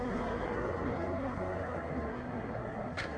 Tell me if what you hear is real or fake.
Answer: fake